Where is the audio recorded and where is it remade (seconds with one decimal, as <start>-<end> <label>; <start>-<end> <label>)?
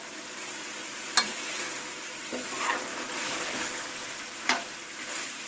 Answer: 0.0-5.5 recorded